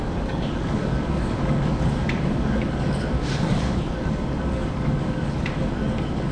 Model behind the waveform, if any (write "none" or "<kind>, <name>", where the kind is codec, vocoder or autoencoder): codec, DAC